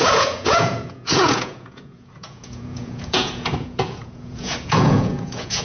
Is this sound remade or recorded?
remade